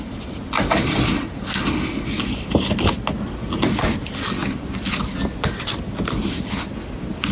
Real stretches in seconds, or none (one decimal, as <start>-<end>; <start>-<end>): 0.0-7.3